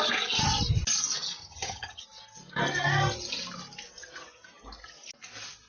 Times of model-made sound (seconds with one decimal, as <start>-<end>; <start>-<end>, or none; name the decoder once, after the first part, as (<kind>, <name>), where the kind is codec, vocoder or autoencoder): 1.4-2.0 (vocoder, HiFi-GAN)